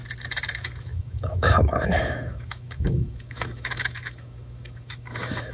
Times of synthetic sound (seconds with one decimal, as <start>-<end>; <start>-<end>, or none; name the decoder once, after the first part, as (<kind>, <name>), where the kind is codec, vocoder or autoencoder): 0.5-5.5 (autoencoder, DAC-VAE)